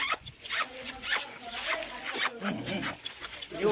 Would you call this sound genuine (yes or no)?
no